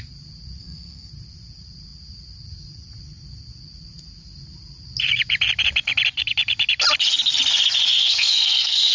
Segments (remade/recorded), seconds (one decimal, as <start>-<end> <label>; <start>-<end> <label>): 0.0-0.6 recorded; 0.6-1.1 remade; 1.1-8.0 recorded; 8.0-8.9 remade